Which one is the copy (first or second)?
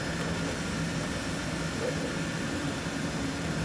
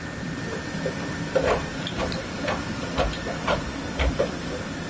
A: second